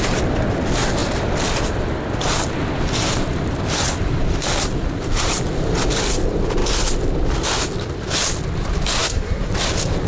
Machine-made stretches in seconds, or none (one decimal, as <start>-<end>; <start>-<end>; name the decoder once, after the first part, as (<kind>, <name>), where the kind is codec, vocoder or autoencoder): 9.0-9.5 (codec, SNAC)